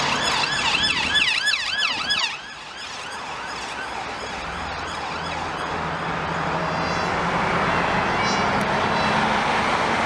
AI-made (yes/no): no